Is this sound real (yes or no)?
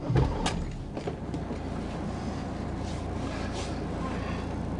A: yes